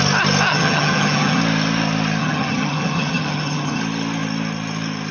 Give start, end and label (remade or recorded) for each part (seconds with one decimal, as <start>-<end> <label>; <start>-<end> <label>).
0.0-0.5 recorded; 0.5-1.4 remade; 1.4-2.2 recorded; 2.2-3.8 remade; 3.8-5.1 recorded